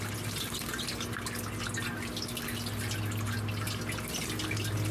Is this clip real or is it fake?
real